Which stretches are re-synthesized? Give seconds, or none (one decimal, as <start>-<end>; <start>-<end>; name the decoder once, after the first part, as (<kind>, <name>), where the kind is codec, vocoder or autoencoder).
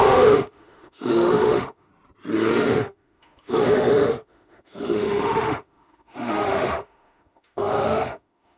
0.0-1.9 (autoencoder, DAC-VAE); 2.5-8.6